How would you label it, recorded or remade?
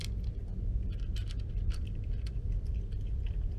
recorded